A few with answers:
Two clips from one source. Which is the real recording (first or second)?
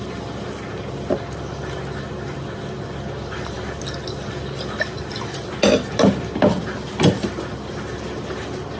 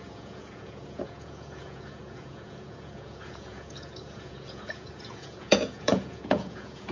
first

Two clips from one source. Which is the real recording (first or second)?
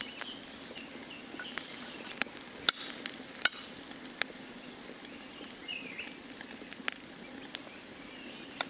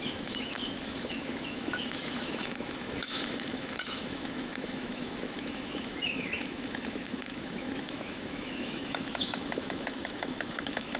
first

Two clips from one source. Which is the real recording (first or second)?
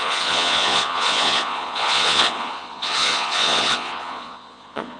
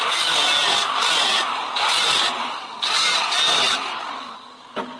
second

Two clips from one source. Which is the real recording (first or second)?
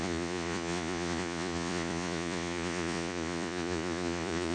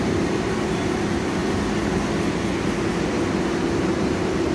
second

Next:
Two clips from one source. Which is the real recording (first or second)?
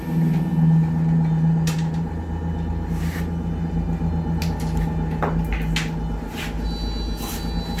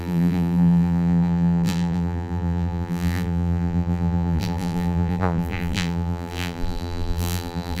first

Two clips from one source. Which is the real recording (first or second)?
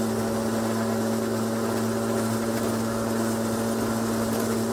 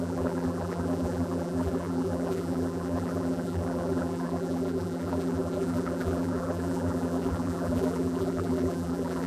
first